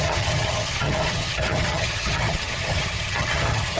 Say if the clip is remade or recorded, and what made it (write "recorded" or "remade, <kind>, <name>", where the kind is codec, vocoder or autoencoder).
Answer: remade, vocoder, HiFi-GAN